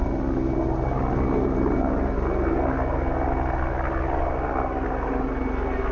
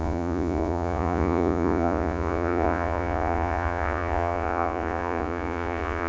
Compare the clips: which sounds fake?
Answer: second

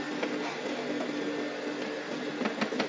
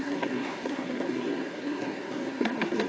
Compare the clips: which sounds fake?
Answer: second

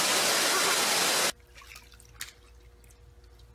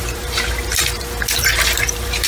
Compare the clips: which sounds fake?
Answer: second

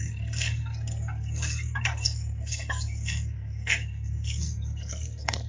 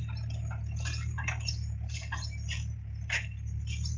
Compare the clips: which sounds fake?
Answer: first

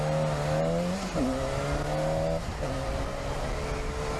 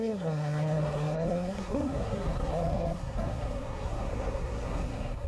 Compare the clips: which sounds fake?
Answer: second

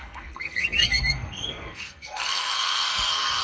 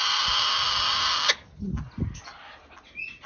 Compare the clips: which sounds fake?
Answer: first